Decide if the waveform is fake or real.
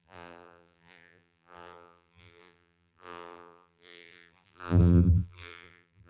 fake